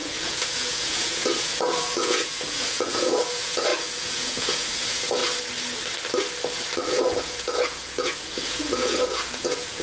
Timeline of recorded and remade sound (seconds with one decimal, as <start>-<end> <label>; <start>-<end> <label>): 0.0-5.2 remade; 5.2-6.9 recorded; 6.9-9.8 remade